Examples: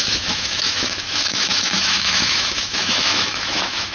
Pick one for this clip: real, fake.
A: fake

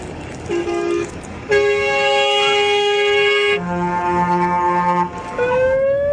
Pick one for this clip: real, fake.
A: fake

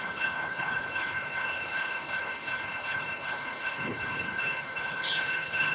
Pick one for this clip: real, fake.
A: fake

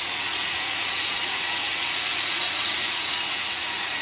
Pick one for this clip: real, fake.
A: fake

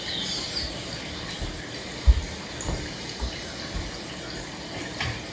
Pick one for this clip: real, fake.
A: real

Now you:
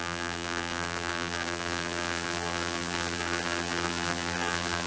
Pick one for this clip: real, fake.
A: fake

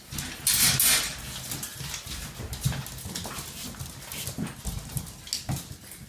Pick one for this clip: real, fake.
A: real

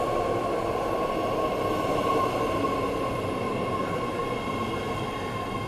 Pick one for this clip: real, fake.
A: real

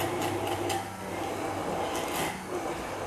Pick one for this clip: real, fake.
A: real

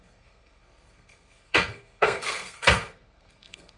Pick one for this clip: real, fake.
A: fake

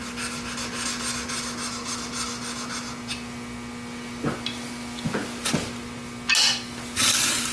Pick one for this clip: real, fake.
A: real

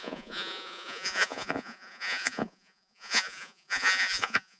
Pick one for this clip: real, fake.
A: fake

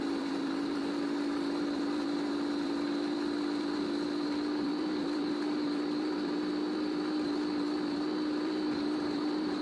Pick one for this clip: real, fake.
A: fake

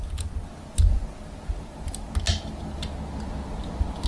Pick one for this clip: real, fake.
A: real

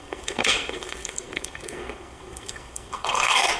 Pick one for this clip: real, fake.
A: fake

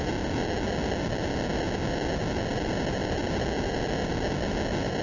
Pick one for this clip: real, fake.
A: real